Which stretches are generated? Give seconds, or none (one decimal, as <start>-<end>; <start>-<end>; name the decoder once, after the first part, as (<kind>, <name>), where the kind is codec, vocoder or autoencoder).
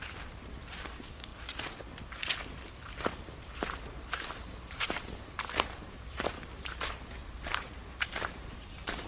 0.0-1.3 (vocoder, BigVGAN v2); 3.9-9.1